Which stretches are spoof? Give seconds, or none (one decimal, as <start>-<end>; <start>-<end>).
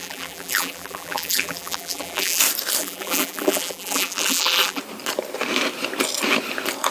0.0-2.4; 2.8-4.8